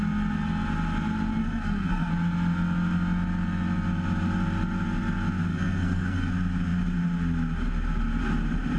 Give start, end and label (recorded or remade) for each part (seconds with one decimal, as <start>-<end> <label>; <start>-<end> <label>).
0.0-1.4 recorded; 1.4-2.1 remade; 2.1-5.5 recorded; 5.5-6.3 remade; 6.3-8.8 recorded